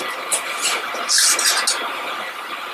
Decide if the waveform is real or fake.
real